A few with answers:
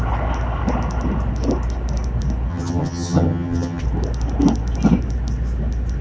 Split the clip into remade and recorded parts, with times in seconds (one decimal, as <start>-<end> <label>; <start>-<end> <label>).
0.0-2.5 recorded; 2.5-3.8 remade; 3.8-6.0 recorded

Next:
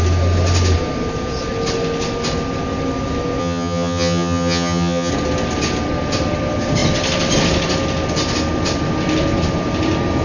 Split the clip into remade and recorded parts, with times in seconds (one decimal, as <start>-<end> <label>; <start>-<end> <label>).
0.0-3.4 recorded; 3.4-5.1 remade; 5.1-10.2 recorded

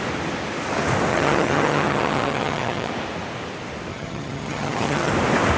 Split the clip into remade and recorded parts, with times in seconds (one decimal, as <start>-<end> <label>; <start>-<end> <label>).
0.0-1.1 recorded; 1.1-2.9 remade; 2.9-3.9 recorded; 3.9-5.1 remade; 5.1-5.6 recorded

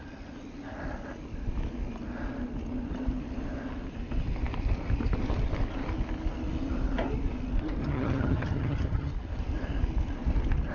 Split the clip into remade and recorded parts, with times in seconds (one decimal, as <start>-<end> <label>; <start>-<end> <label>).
0.0-7.8 recorded; 7.8-9.1 remade; 9.1-10.7 recorded

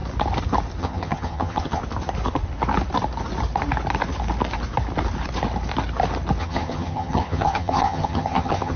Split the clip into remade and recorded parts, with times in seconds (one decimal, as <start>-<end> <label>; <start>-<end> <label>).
0.0-0.8 recorded; 0.8-1.8 remade; 1.8-6.4 recorded; 6.4-8.8 remade

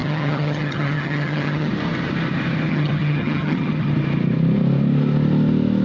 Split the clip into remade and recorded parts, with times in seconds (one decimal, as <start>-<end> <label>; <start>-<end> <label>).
0.0-1.7 remade; 1.7-2.7 recorded; 2.7-3.9 remade; 3.9-5.8 recorded

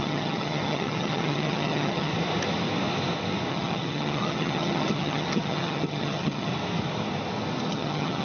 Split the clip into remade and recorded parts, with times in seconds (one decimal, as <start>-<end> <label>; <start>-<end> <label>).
0.0-2.1 remade; 2.1-3.5 recorded; 3.5-6.5 remade; 6.5-7.7 recorded; 7.7-8.2 remade